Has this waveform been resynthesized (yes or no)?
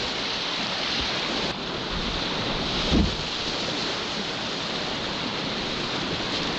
no